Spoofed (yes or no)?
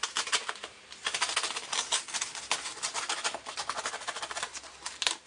no